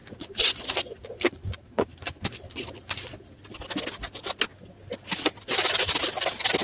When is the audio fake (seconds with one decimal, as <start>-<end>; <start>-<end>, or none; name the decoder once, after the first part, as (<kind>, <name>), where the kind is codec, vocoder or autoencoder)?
0.0-3.4 (vocoder, Vocos)